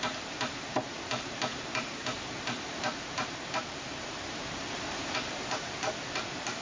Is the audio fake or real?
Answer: fake